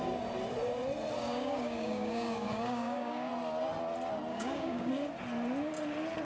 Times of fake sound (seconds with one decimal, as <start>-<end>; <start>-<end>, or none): 1.2-3.3; 4.3-4.9